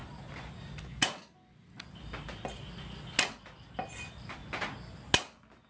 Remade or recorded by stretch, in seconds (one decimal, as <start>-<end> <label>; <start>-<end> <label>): 0.0-5.7 recorded